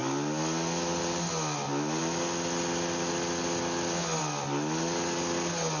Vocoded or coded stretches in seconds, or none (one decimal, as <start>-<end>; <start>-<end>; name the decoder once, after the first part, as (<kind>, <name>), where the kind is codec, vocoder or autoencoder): none